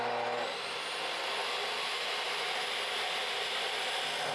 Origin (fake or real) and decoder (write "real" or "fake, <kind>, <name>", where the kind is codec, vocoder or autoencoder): real